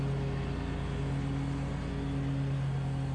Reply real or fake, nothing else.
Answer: real